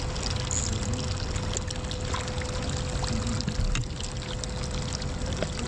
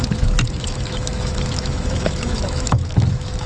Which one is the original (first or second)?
first